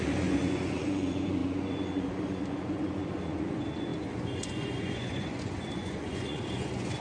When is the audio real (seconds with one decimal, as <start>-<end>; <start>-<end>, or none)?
none